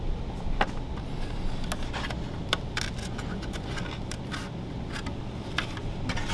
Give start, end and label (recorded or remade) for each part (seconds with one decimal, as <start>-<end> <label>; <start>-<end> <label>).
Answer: 0.0-3.0 recorded; 3.0-3.8 remade; 3.8-6.3 recorded